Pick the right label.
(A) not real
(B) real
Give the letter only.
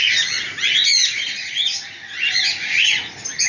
B